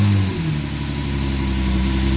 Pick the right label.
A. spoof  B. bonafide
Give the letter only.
B